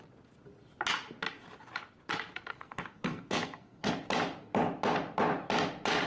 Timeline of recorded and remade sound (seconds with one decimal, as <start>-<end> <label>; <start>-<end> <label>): 0.0-2.5 recorded; 2.5-3.9 remade; 3.9-6.1 recorded